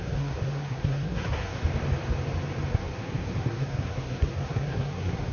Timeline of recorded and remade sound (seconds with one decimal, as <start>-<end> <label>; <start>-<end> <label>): 0.0-1.6 remade; 1.6-2.7 recorded; 2.7-5.3 remade